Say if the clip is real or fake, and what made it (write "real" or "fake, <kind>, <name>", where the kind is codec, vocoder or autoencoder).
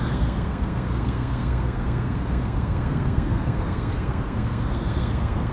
fake, codec, SNAC